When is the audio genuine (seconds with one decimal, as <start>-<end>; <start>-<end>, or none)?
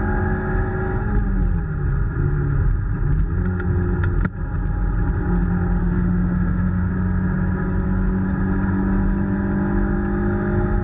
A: 0.0-5.8; 6.9-10.8